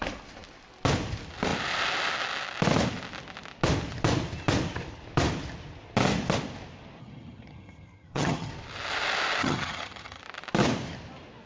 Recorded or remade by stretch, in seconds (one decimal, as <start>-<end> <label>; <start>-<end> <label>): 0.0-7.0 recorded; 7.0-8.5 remade; 8.5-9.4 recorded; 9.4-10.2 remade; 10.2-11.5 recorded